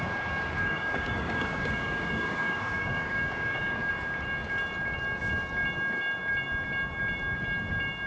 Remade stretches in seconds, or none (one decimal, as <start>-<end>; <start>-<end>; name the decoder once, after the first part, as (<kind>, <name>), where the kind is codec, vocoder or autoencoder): 0.6-3.9 (codec, DAC)